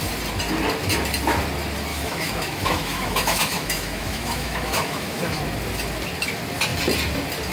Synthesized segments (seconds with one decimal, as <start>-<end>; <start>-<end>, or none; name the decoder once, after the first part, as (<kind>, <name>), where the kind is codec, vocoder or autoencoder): 1.9-5.4 (autoencoder, DAC-VAE)